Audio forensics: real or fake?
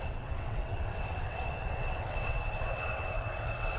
fake